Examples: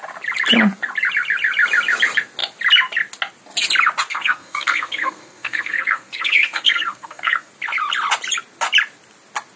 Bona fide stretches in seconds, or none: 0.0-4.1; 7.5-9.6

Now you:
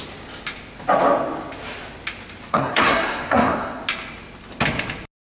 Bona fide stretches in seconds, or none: 0.0-2.5; 3.8-5.2

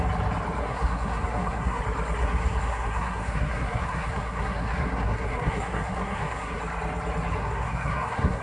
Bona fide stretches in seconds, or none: 0.0-0.6; 1.8-2.2; 6.6-7.4

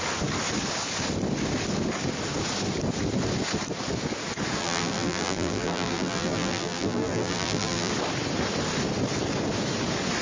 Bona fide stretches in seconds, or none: 0.0-4.6; 7.9-10.2

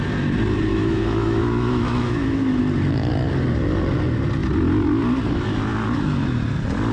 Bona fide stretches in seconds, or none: 0.0-0.7; 2.6-6.9